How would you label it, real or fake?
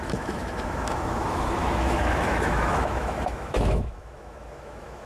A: fake